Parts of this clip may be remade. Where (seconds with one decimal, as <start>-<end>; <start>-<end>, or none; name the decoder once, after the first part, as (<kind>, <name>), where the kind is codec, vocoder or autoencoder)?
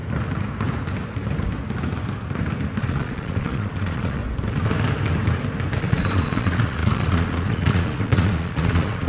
2.8-4.2 (vocoder, Vocos); 5.8-9.1